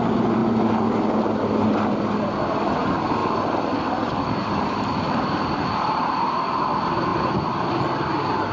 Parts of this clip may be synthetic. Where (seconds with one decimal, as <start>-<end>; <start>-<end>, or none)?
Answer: 3.2-5.9; 7.1-7.7